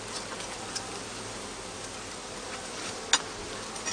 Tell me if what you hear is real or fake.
real